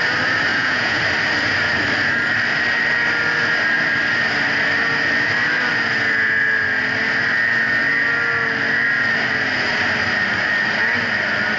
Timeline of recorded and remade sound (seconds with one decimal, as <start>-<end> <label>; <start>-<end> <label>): 0.0-0.5 recorded; 0.5-1.0 remade; 1.0-11.6 recorded